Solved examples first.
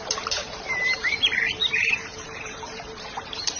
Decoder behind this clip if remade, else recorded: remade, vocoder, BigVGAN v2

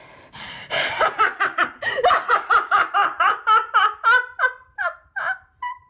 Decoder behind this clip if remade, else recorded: remade, vocoder, BigVGAN v2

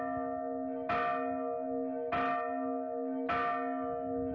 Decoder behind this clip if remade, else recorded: recorded